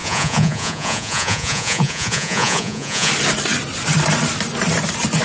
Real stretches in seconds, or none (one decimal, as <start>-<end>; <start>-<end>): 3.1-5.2